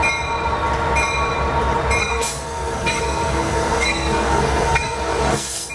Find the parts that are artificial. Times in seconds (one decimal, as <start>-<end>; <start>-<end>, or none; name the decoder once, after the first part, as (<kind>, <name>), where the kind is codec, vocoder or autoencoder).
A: 2.0-5.7 (codec, SNAC)